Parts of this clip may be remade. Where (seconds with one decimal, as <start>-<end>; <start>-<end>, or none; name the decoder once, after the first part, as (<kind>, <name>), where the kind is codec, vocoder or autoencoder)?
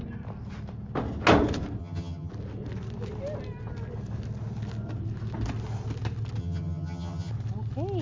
1.8-2.3 (vocoder, HiFi-GAN); 6.4-7.3